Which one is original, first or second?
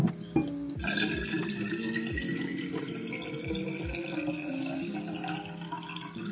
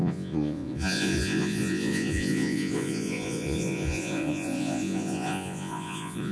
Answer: first